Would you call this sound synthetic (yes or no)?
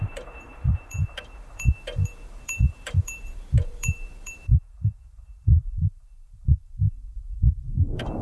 yes